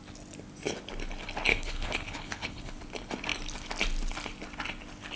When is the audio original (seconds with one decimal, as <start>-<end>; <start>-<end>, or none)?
0.0-1.5; 2.8-5.2